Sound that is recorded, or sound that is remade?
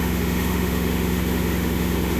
remade